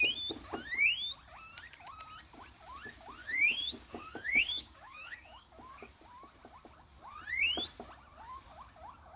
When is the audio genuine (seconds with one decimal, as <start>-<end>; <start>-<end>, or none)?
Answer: 0.0-3.2; 6.0-9.2